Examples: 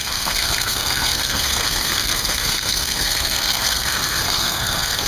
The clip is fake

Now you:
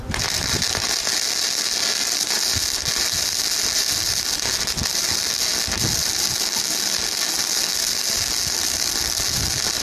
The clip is real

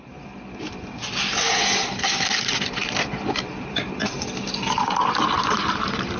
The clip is real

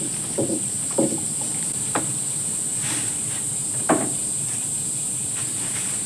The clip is fake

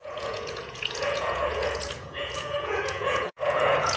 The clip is fake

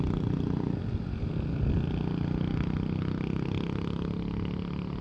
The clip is real